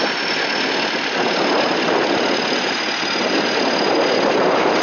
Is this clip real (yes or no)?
yes